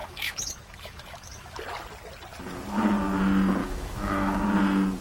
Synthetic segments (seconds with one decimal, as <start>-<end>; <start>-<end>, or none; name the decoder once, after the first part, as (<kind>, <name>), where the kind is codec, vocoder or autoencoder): 0.0-1.6 (autoencoder, DAC-VAE); 3.6-4.4